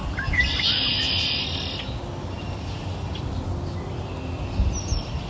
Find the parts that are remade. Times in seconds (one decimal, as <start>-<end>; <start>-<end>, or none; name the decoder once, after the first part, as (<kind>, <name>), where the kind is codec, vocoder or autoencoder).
none